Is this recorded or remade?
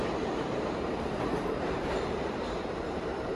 remade